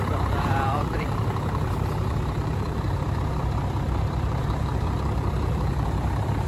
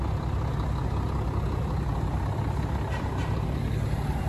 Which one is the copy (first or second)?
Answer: first